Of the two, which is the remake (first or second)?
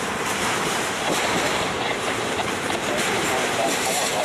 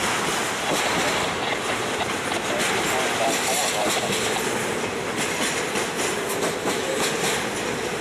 first